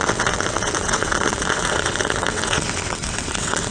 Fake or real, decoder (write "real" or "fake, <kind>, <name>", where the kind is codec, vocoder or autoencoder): fake, vocoder, WaveNeXt